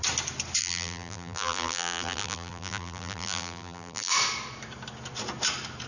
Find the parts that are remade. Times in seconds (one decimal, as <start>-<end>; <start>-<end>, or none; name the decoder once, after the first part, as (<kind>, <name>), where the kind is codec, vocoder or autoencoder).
0.6-4.1 (vocoder, BigVGAN v2)